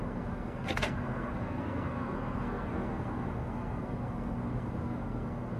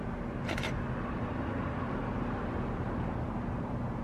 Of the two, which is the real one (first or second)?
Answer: second